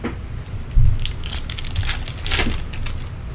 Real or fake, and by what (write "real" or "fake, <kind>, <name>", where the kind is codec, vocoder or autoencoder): real